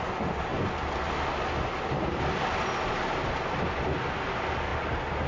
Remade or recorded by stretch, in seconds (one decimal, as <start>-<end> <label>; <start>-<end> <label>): 0.0-5.3 recorded